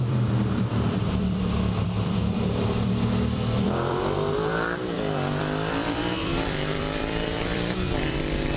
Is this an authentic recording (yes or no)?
no